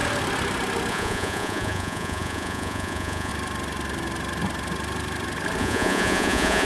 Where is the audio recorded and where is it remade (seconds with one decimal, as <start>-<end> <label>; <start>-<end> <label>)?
0.0-0.9 recorded; 0.9-3.3 remade; 3.3-5.6 recorded; 5.6-6.7 remade